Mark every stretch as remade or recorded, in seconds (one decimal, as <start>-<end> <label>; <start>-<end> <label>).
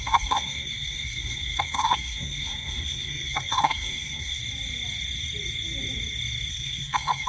0.0-4.4 remade; 4.4-6.5 recorded; 6.5-7.3 remade